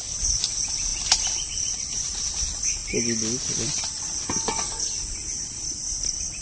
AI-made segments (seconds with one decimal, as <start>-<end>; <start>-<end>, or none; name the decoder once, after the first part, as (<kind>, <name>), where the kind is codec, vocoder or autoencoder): none